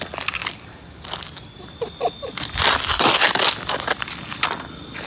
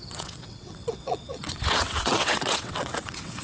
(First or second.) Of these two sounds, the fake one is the second